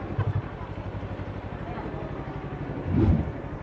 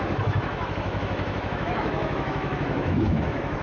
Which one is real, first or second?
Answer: first